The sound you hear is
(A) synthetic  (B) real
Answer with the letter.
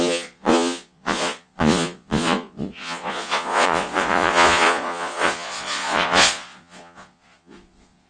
A